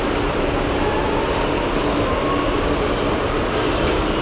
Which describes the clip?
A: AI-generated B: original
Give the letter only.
B